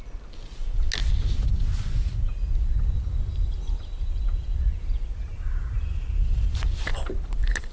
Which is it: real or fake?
real